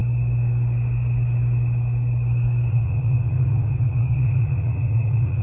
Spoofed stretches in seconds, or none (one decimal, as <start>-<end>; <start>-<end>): 2.7-5.4